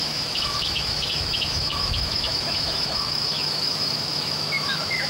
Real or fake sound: fake